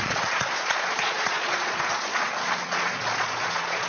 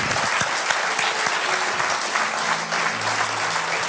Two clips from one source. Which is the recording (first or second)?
second